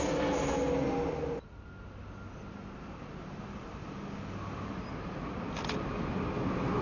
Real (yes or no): yes